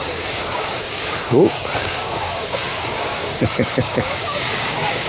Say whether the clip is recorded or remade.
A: remade